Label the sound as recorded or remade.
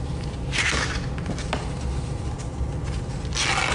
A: recorded